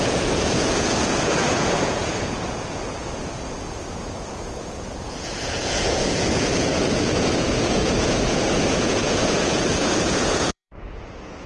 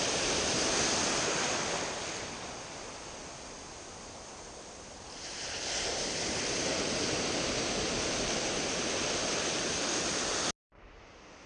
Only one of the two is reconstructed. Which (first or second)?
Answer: first